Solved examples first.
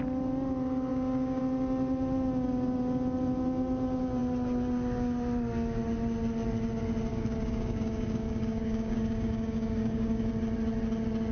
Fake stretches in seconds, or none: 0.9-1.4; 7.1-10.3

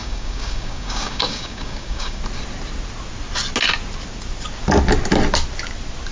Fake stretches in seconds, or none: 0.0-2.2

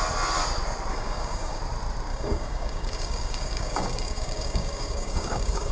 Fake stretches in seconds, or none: 0.9-1.6; 2.1-5.7

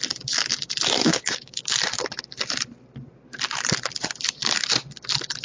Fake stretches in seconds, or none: 1.0-1.6

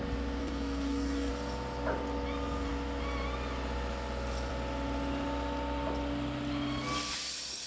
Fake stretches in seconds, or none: 0.4-1.3

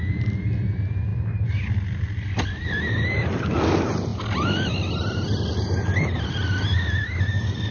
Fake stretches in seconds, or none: none